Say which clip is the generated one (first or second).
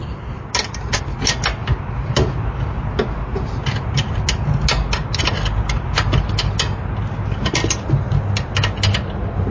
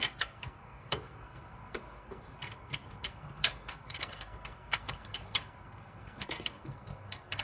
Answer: second